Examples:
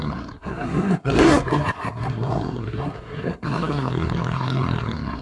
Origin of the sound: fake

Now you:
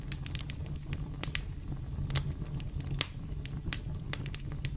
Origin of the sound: real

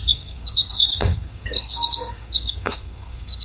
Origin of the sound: fake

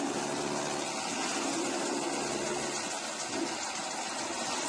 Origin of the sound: real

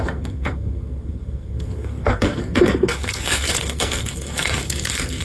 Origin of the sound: fake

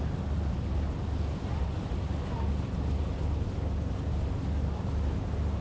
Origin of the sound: real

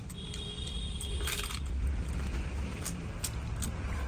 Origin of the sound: real